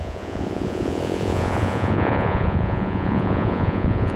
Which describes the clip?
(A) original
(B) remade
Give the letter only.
B